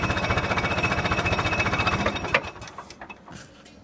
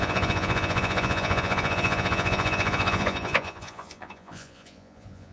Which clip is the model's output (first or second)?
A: second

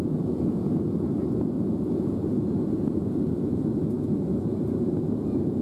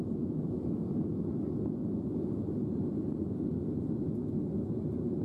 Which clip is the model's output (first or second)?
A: first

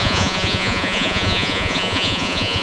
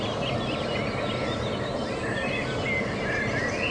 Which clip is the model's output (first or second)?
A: first